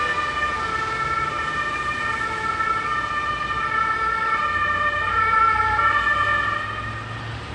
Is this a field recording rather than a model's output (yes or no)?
yes